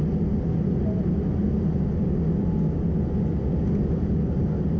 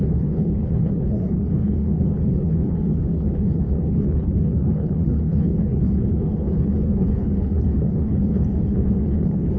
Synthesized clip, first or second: second